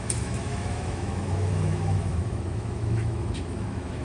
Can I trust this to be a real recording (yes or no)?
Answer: no